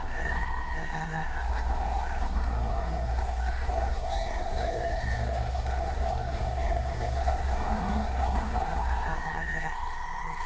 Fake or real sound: fake